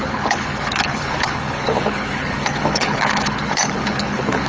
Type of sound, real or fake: fake